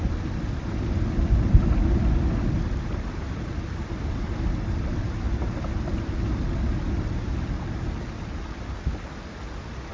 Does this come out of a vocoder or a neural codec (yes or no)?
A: no